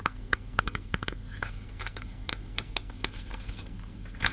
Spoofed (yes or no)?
yes